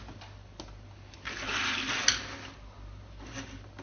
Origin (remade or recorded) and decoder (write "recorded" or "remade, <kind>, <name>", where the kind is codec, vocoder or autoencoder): recorded